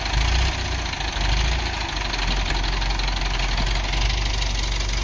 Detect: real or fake real